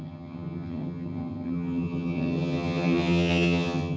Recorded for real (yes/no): no